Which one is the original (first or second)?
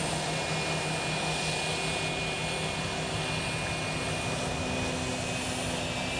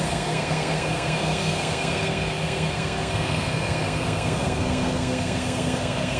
first